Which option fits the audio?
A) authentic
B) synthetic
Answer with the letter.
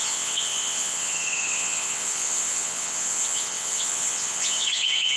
B